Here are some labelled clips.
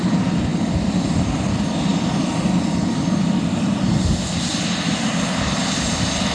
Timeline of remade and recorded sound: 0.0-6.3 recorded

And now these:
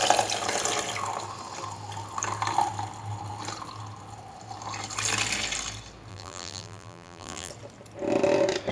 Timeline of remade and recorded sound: 0.0-6.1 recorded; 6.1-7.5 remade; 7.5-8.7 recorded

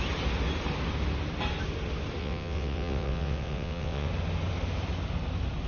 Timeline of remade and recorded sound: 0.0-2.2 recorded; 2.2-4.1 remade; 4.1-5.7 recorded